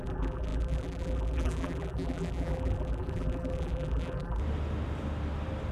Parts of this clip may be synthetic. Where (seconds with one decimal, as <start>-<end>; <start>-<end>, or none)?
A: 0.0-4.4